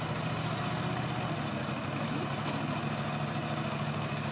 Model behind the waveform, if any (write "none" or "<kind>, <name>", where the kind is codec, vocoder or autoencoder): none